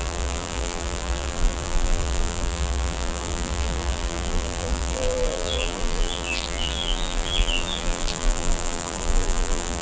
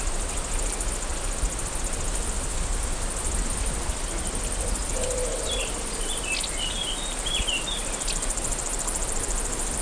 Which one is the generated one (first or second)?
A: first